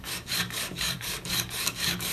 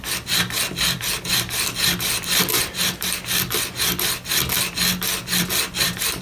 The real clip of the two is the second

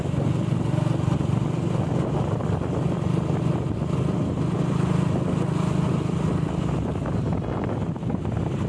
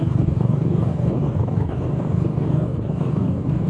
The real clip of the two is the first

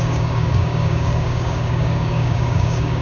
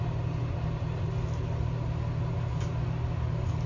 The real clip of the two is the second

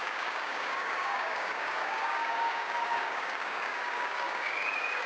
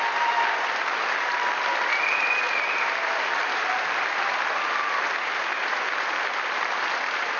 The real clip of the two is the second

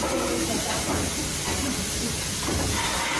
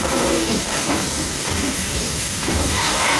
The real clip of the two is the first